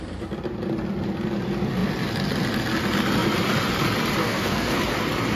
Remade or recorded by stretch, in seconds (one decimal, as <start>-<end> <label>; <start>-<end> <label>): 0.0-4.2 recorded; 4.2-4.8 remade; 4.8-5.4 recorded